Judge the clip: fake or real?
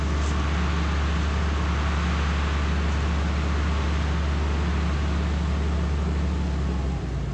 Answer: real